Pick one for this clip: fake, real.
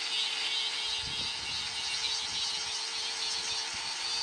real